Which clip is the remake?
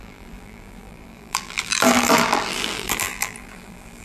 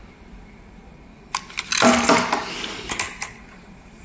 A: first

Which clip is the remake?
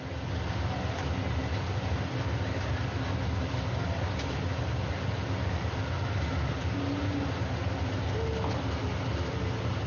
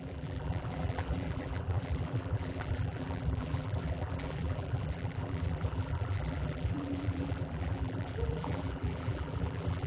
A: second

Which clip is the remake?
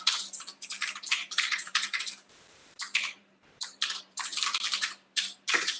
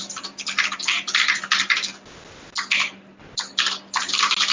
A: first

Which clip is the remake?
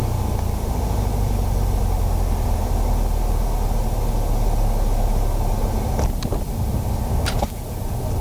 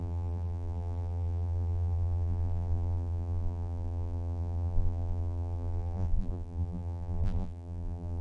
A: second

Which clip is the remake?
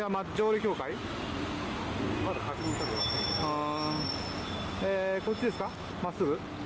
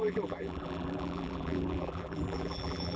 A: second